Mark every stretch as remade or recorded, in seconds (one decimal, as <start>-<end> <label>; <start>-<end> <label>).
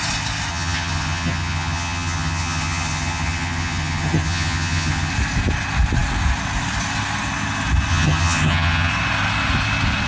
0.0-0.5 recorded; 0.5-5.1 remade; 5.1-7.9 recorded; 7.9-8.9 remade; 8.9-10.1 recorded